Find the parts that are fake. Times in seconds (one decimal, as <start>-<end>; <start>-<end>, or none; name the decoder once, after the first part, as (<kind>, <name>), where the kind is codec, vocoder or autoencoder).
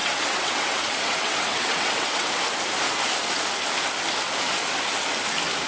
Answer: 0.0-2.4 (vocoder, WaveNeXt)